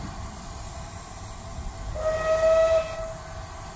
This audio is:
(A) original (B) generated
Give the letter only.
A